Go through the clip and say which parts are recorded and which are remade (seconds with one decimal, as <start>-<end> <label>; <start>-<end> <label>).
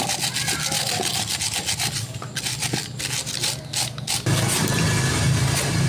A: 0.0-5.9 recorded